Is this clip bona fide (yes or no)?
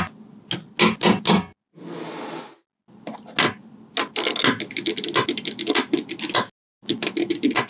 yes